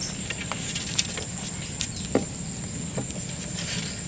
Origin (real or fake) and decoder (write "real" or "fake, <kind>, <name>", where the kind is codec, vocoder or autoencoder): real